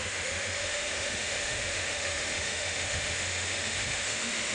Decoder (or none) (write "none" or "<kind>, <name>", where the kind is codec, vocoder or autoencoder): autoencoder, DAC-VAE